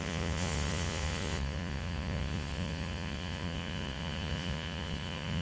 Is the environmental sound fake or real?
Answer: fake